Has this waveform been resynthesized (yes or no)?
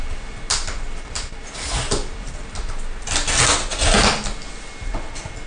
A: no